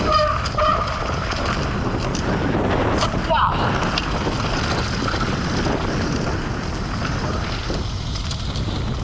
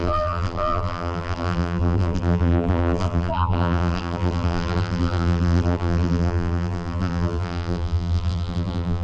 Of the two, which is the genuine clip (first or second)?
first